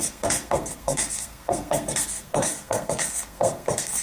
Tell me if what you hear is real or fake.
fake